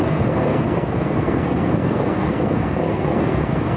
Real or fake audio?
fake